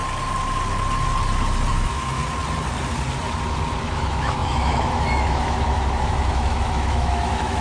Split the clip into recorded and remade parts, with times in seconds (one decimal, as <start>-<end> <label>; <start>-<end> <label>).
0.0-1.7 recorded; 1.7-2.2 remade; 2.2-3.8 recorded; 3.8-7.6 remade